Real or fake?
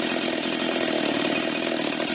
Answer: real